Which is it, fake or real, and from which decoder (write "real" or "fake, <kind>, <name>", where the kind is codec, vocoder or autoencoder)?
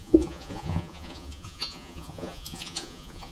fake, vocoder, Vocos